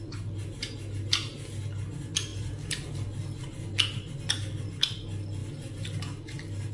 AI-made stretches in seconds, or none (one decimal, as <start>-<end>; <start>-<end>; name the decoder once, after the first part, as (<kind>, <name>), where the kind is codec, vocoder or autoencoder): 2.3-2.9 (vocoder, BigVGAN v2)